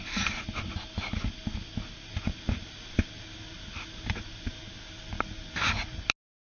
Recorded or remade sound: recorded